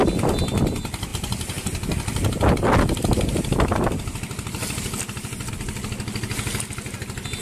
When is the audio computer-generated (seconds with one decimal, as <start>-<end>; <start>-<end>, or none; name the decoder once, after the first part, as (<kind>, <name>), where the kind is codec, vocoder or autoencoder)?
none